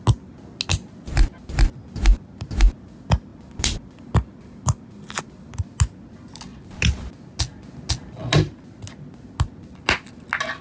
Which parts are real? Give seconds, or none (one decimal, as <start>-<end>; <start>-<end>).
0.0-10.6